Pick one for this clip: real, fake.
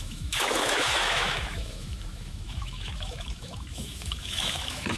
fake